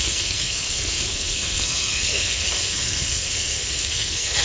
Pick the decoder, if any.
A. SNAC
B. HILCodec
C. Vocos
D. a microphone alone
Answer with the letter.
A